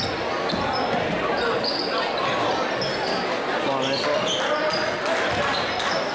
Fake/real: real